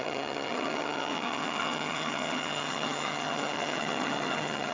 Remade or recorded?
remade